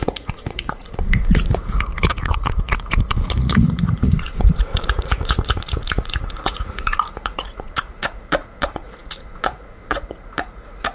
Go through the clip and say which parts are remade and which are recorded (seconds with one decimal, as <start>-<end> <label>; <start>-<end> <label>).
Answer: 0.0-10.9 remade